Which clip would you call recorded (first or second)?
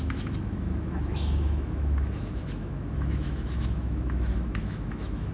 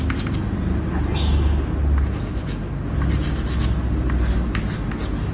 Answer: second